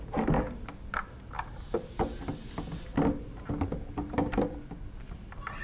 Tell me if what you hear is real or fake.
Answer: real